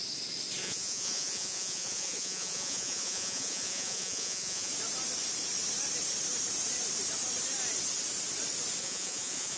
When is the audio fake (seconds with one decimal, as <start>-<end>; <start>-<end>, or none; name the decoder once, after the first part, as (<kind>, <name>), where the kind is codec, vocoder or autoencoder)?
0.6-4.7 (vocoder, Vocos); 8.8-9.6